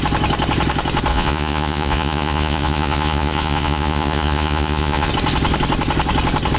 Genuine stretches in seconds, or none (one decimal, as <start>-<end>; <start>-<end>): 0.0-1.1; 5.1-6.6